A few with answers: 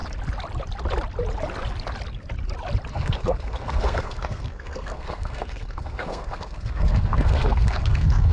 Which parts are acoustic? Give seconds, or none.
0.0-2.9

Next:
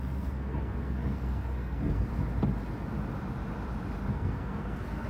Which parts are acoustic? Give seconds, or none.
2.1-4.1

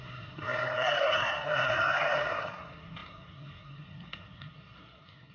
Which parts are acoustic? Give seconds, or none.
none